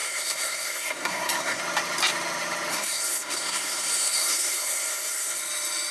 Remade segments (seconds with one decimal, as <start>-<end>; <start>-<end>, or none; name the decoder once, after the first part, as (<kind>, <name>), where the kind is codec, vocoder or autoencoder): 0.0-1.6 (codec, SNAC); 2.7-5.4